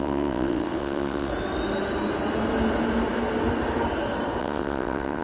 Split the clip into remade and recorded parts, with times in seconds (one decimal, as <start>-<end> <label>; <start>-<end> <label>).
0.0-1.3 remade; 1.3-4.4 recorded; 4.4-5.2 remade